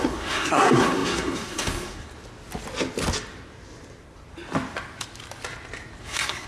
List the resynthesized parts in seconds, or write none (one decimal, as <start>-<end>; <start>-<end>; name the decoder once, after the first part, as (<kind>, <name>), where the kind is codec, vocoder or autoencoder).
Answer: 0.0-2.1 (codec, SNAC); 6.0-6.5